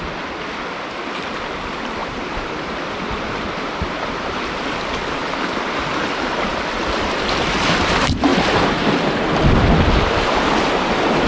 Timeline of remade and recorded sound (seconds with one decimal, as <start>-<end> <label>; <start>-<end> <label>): 0.0-2.0 recorded; 2.0-4.4 remade; 4.4-8.3 recorded; 8.3-9.2 remade; 9.2-11.3 recorded

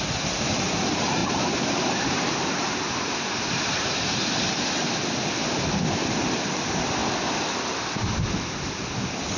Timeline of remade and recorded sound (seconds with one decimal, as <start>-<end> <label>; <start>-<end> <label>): 0.0-1.2 recorded; 1.2-4.5 remade; 4.5-9.4 recorded

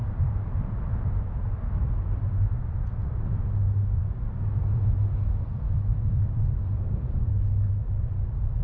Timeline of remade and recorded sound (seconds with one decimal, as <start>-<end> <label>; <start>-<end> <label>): 0.0-1.5 remade; 1.5-5.9 recorded; 5.9-7.1 remade; 7.1-8.6 recorded

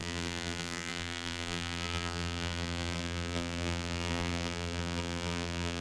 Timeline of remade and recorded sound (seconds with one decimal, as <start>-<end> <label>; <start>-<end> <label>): 0.0-5.8 remade

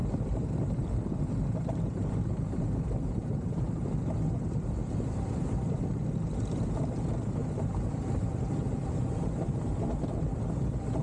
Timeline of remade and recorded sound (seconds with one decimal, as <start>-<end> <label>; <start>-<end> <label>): 0.0-3.9 remade; 3.9-4.8 recorded; 4.8-6.1 remade; 6.1-7.4 recorded; 7.4-8.9 remade; 8.9-11.0 recorded